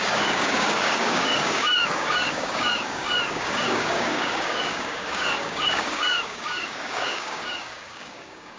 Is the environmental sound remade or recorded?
remade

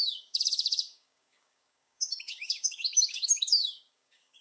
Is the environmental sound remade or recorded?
remade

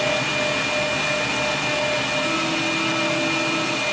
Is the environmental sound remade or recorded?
recorded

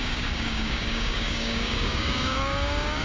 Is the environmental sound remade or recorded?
remade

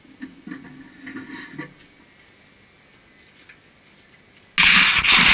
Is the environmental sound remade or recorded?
recorded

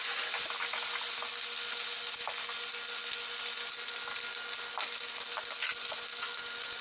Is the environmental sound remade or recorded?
recorded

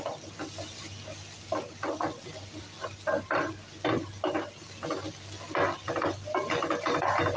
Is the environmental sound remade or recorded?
recorded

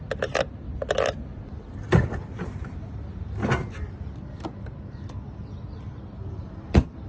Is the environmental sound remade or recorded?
recorded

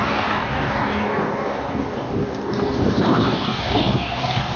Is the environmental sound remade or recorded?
remade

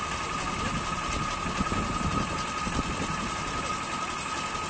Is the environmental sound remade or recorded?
recorded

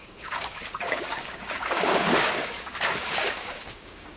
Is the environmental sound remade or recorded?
remade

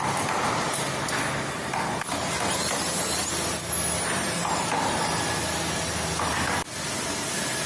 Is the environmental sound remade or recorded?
recorded